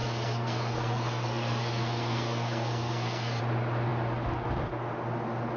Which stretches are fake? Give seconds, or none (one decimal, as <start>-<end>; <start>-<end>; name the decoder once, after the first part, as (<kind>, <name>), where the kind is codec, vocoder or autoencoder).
0.0-3.4 (codec, SNAC)